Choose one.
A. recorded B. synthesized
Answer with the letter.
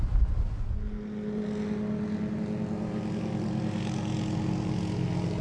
A